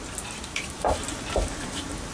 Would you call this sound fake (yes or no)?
no